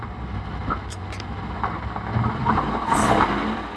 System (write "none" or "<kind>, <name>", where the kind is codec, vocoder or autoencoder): none